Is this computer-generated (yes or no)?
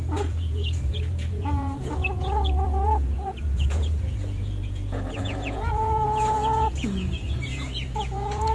yes